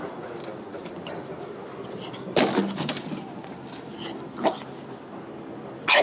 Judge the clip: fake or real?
real